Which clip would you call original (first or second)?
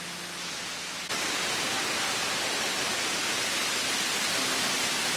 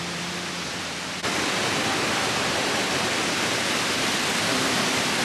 first